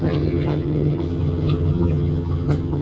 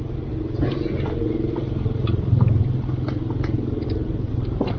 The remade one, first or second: first